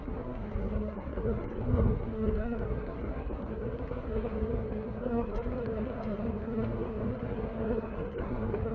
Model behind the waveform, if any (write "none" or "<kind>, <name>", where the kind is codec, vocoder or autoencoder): codec, SNAC